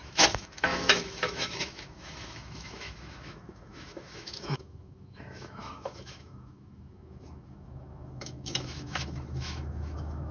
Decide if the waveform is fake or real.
fake